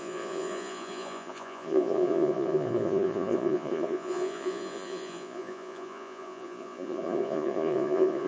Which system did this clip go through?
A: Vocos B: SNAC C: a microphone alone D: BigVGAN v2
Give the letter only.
A